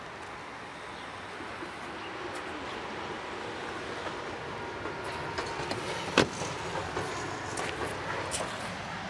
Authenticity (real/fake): real